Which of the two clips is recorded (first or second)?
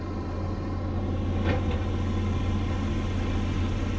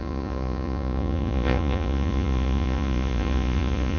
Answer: first